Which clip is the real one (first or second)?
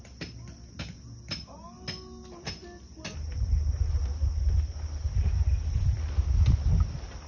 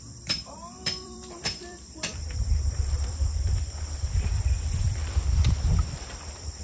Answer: first